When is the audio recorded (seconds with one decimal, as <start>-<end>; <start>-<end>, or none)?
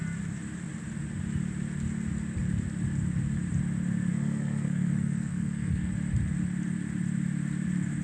0.0-4.1; 5.9-8.0